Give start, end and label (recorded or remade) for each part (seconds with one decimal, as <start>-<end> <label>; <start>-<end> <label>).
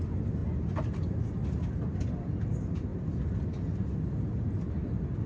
0.0-5.3 recorded